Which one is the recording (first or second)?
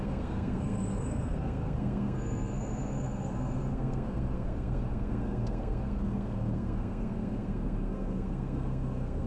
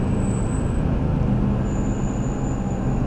second